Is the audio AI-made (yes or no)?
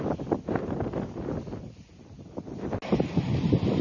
no